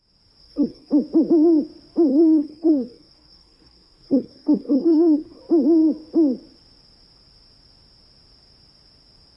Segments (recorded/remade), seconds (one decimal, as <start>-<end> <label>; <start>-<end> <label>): 0.0-0.4 recorded; 0.4-0.9 remade; 0.9-2.1 recorded; 2.1-5.4 remade; 5.4-9.4 recorded